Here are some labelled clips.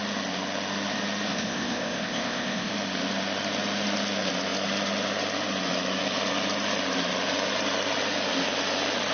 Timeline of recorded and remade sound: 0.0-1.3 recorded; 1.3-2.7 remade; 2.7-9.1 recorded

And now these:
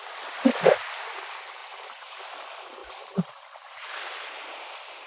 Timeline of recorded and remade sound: 0.0-1.6 recorded; 1.6-2.2 remade; 2.2-2.8 recorded; 2.8-4.6 remade; 4.6-5.1 recorded

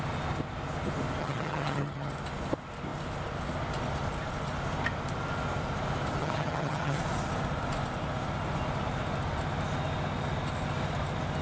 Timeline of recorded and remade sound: 0.0-1.2 recorded; 1.2-2.1 remade; 2.1-6.2 recorded; 6.2-7.0 remade; 7.0-11.4 recorded

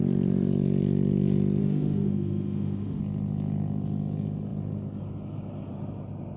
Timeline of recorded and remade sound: 0.0-1.6 recorded; 1.6-3.0 remade; 3.0-6.4 recorded